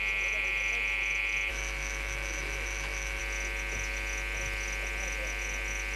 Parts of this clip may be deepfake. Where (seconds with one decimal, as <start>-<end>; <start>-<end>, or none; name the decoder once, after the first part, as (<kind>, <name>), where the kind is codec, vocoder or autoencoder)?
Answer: 1.5-3.2 (autoencoder, DAC-VAE)